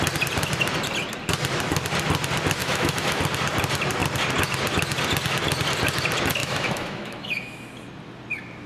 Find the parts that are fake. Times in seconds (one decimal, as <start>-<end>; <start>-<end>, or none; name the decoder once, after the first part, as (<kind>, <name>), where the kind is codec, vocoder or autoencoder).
2.6-3.2 (autoencoder, DAC-VAE); 6.4-7.7